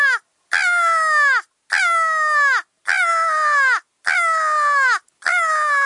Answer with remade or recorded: recorded